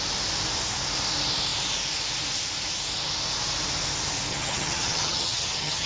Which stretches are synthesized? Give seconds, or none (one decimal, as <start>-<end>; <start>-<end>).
4.3-5.9